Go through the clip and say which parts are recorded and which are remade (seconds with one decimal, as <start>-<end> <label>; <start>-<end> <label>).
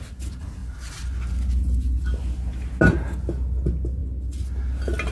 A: 0.0-5.1 recorded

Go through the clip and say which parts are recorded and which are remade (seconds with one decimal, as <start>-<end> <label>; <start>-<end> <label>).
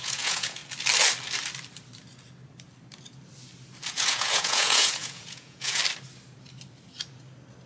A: 0.0-0.6 remade; 0.6-3.9 recorded; 3.9-5.8 remade; 5.8-7.7 recorded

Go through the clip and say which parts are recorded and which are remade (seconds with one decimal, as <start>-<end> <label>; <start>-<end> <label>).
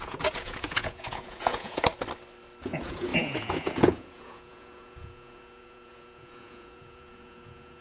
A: 0.0-1.9 remade; 1.9-2.6 recorded; 2.6-7.8 remade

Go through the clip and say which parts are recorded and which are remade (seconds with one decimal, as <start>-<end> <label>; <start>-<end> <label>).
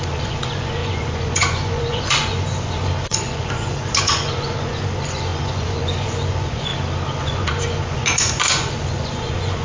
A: 0.0-6.7 remade; 6.7-7.2 recorded; 7.2-9.6 remade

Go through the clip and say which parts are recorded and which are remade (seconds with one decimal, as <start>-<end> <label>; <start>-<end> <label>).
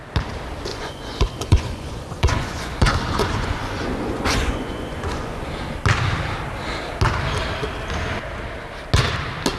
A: 0.0-0.7 recorded; 0.7-5.5 remade; 5.5-9.6 recorded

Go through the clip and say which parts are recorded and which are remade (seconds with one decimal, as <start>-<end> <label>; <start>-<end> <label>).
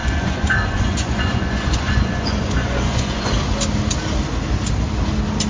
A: 0.0-3.3 remade; 3.3-5.5 recorded